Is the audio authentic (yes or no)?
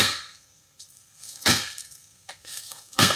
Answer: no